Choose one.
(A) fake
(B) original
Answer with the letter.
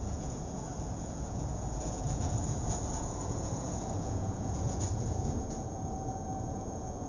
A